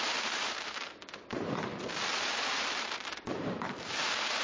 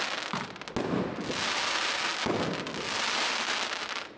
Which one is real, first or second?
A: second